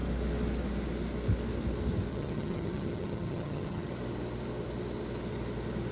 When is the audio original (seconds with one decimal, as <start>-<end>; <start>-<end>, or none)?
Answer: 0.0-2.1; 3.9-5.9